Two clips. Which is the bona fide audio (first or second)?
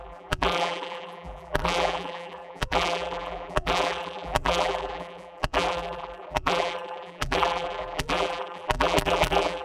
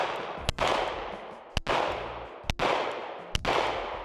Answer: second